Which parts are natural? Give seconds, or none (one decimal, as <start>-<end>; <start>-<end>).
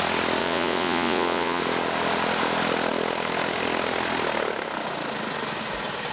0.0-0.4; 1.6-6.1